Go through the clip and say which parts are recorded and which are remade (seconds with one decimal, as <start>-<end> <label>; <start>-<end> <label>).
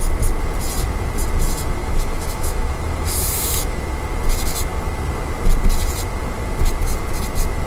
0.0-1.8 recorded; 1.8-3.8 remade; 3.8-7.7 recorded